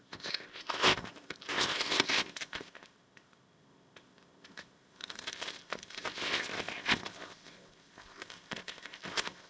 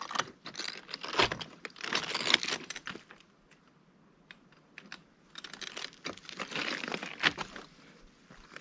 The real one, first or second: second